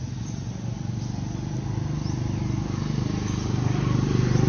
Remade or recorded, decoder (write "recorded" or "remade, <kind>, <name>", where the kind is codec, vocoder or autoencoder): recorded